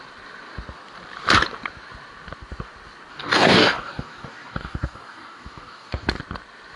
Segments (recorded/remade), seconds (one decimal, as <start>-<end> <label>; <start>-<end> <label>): 0.0-3.1 recorded; 3.1-6.2 remade; 6.2-6.8 recorded